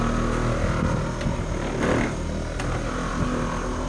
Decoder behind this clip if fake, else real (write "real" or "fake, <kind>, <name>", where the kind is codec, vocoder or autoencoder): real